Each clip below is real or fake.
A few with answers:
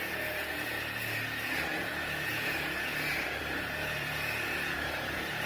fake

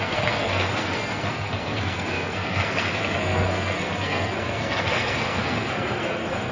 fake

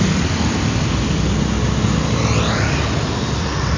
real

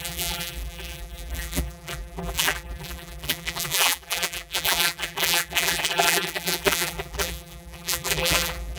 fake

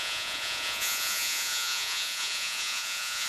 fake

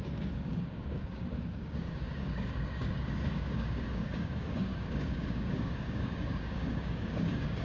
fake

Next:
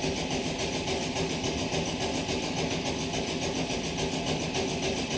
real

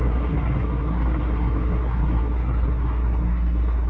fake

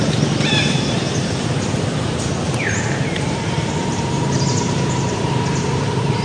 fake